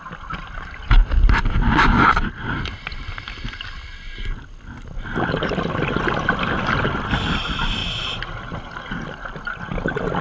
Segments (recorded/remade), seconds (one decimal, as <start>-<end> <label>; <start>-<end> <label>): 0.0-10.2 recorded